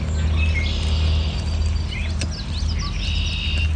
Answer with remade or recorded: recorded